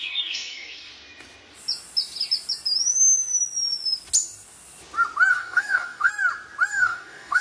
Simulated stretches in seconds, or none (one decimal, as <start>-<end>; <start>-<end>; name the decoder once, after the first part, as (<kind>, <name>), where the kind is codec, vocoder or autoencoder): 0.0-0.9 (codec, DAC); 5.3-6.1; 6.7-7.4